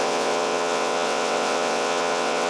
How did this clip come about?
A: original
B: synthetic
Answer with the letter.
B